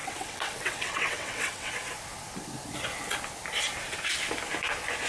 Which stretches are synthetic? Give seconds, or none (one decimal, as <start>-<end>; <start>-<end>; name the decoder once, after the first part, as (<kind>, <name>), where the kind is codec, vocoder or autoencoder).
0.0-1.7 (vocoder, WaveNeXt)